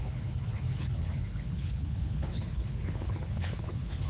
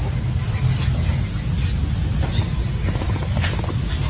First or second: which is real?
second